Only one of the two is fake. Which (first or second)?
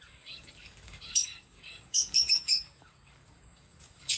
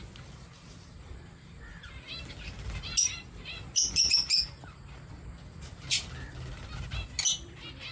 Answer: first